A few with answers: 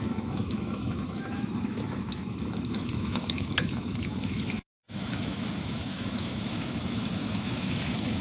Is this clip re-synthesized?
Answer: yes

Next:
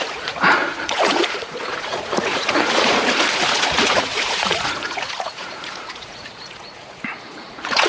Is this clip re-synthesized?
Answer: yes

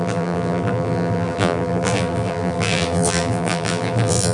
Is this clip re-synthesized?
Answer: yes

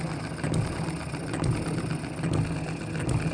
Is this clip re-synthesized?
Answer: no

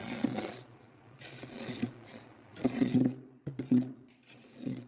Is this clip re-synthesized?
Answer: yes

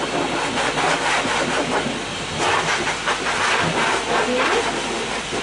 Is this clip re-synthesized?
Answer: no